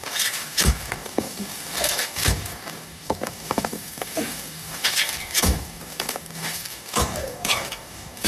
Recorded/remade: remade